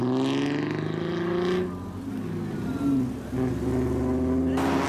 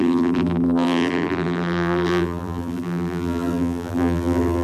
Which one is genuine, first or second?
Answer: first